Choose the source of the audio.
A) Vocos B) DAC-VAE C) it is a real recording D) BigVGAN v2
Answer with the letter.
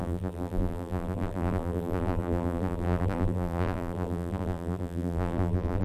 D